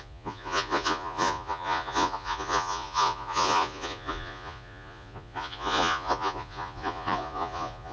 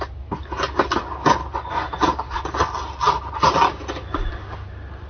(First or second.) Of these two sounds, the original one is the second